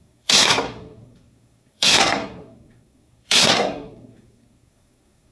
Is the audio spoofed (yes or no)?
yes